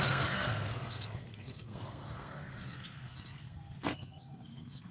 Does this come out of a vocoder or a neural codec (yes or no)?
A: yes